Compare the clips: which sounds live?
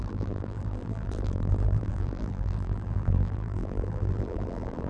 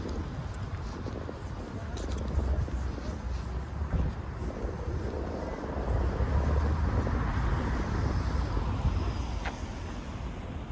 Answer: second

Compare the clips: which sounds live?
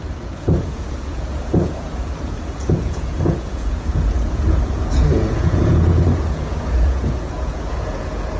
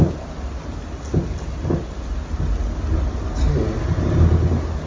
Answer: second